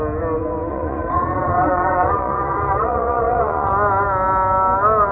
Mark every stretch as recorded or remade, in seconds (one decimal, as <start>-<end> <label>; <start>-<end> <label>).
0.0-0.7 recorded; 0.7-3.7 remade; 3.7-5.1 recorded